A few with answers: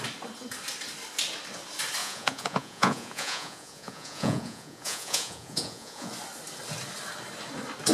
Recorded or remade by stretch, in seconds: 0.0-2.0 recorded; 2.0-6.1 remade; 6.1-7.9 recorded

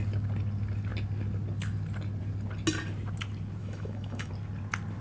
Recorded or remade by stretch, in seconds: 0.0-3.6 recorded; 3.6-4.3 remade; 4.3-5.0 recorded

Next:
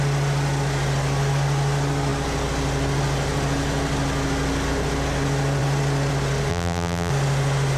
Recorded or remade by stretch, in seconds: 0.0-6.5 recorded; 6.5-7.1 remade; 7.1-7.8 recorded

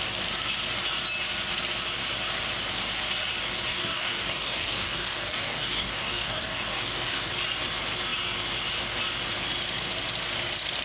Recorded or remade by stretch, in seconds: 0.0-3.7 recorded; 3.7-7.3 remade; 7.3-10.8 recorded